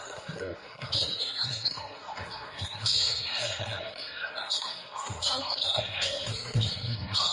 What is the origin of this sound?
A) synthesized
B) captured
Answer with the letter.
A